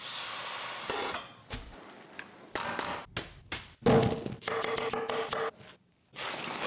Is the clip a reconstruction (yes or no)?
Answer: no